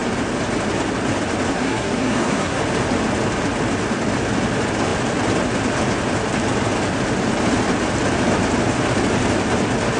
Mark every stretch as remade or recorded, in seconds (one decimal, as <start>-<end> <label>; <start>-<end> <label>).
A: 0.0-1.5 recorded; 1.5-2.6 remade; 2.6-10.0 recorded